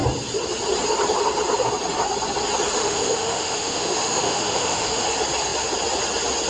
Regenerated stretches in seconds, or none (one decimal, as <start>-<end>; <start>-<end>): 2.8-5.1